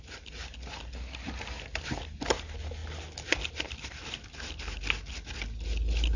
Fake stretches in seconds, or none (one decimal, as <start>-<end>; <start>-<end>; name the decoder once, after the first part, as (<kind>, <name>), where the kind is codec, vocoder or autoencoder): none